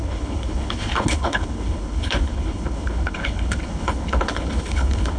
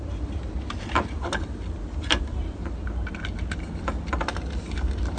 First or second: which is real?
second